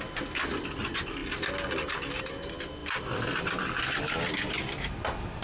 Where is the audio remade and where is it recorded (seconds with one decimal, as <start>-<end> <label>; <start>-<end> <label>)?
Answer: 0.0-5.4 recorded